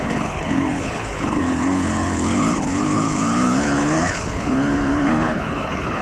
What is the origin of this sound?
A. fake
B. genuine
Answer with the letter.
A